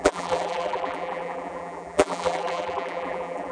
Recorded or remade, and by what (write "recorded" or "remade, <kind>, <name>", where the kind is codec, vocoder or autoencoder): remade, vocoder, BigVGAN v2